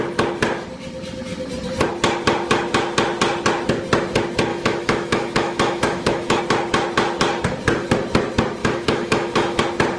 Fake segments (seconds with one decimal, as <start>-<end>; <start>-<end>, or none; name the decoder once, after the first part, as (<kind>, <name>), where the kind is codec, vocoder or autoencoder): 4.5-6.4 (autoencoder, DAC-VAE); 8.6-9.6